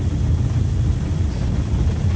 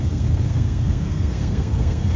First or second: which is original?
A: first